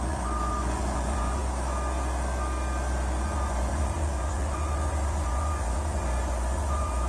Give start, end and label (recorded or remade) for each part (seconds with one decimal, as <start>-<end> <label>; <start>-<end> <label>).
0.0-1.4 remade; 1.4-3.2 recorded; 3.2-7.1 remade